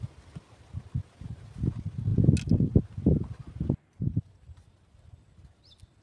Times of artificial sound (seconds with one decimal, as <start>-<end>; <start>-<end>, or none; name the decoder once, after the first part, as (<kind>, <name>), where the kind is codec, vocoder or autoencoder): none